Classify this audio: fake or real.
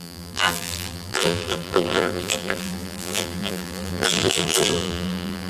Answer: fake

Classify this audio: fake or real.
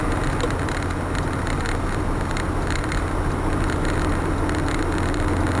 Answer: real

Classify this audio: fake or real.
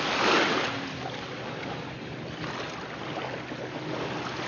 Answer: real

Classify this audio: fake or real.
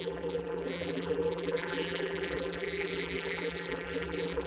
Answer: fake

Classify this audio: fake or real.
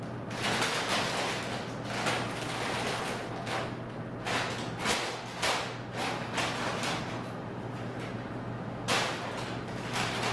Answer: real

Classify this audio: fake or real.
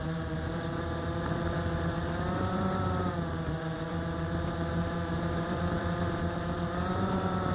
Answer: fake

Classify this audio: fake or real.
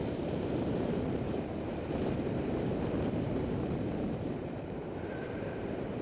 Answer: fake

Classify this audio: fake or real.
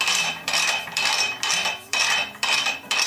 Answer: fake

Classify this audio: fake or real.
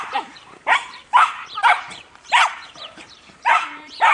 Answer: fake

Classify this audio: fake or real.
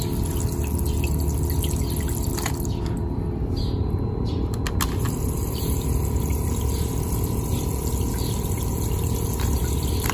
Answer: real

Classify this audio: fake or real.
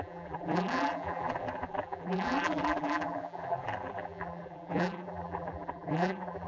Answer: fake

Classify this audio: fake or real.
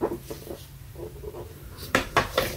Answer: fake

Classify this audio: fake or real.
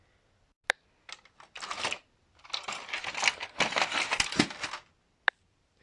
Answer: real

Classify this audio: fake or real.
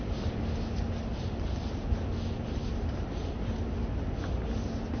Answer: real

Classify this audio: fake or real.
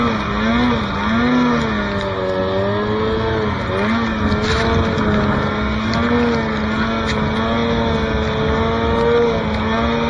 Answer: real